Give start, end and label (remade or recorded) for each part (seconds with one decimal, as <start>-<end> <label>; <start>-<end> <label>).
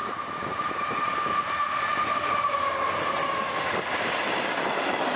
0.0-3.1 remade; 3.1-5.2 recorded